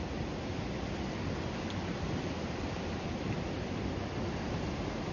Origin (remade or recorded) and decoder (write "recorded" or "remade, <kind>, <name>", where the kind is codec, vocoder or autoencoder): recorded